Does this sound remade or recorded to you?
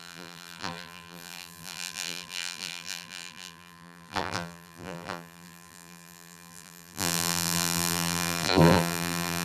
remade